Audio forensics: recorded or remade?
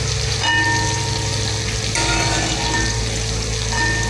recorded